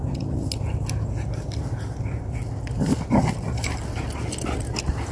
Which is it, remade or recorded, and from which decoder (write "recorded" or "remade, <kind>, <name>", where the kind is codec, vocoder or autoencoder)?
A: recorded